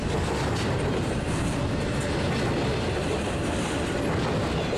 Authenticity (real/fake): real